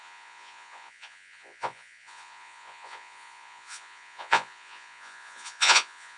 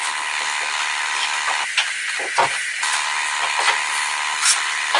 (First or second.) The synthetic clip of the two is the first